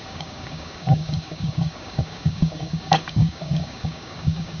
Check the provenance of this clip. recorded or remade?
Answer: remade